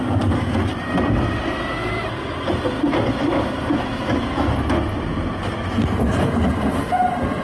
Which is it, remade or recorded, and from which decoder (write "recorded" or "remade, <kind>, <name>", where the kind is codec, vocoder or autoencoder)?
recorded